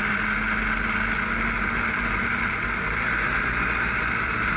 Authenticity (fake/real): real